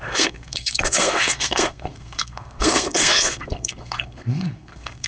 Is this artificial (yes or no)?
yes